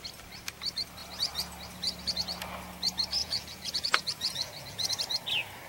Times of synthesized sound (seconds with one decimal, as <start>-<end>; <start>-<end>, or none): 3.2-4.9